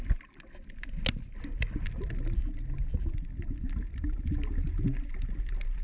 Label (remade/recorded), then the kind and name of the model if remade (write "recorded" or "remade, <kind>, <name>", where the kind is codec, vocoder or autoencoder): recorded